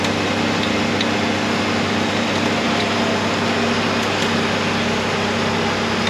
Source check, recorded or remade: recorded